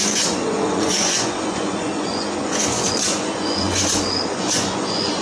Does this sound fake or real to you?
fake